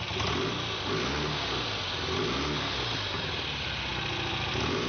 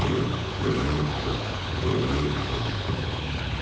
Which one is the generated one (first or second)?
second